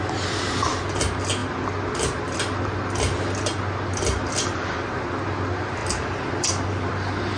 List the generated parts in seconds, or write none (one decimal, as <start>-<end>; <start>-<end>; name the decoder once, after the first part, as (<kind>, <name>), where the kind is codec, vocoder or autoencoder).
none